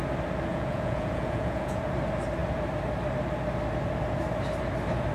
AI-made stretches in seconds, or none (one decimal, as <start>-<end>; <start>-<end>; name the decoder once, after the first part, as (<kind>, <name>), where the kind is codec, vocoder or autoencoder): 0.5-1.8 (vocoder, Vocos)